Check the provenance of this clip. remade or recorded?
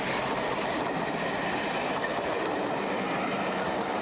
recorded